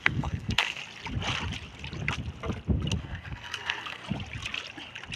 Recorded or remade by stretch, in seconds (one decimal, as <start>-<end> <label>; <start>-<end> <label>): 0.0-0.8 remade; 0.8-3.0 recorded; 3.0-4.0 remade; 4.0-5.2 recorded